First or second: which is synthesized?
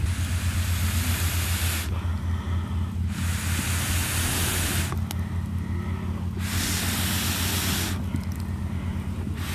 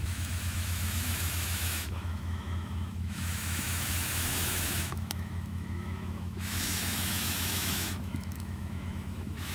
second